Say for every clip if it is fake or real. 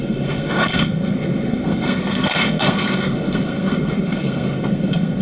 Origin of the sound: fake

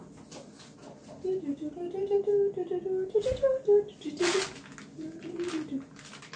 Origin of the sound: real